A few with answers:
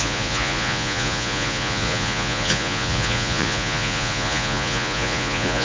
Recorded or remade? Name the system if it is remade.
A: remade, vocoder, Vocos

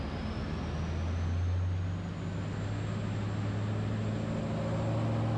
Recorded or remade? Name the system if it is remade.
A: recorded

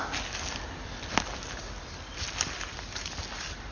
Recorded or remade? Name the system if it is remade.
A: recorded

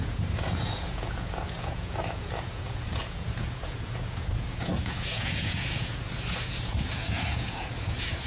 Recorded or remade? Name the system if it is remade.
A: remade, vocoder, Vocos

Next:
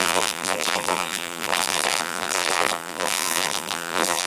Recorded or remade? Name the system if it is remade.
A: remade, vocoder, BigVGAN v2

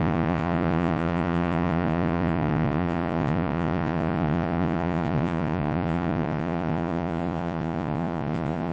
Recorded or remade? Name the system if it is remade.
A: remade, vocoder, Vocos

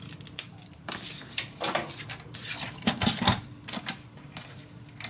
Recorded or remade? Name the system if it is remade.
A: recorded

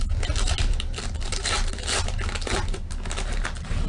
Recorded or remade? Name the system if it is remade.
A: recorded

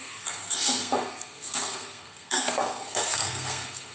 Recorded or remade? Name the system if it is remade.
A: remade, codec, SNAC